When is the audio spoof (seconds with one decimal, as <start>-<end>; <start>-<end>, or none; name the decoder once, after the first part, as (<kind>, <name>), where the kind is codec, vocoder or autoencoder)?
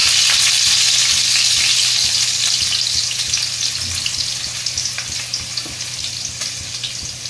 none